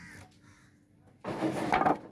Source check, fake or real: real